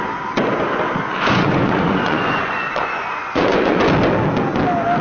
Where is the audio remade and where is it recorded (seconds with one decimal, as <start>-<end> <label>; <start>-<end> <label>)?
0.0-1.0 recorded; 1.0-3.8 remade; 3.8-5.0 recorded